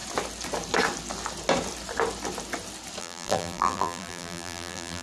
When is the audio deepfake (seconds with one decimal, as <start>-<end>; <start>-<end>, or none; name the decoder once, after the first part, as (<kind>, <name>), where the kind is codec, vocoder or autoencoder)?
3.0-5.0 (vocoder, BigVGAN v2)